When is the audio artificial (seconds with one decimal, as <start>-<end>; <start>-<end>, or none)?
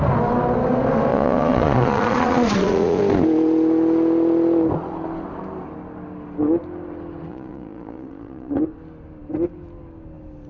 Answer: 1.1-3.0; 7.3-8.6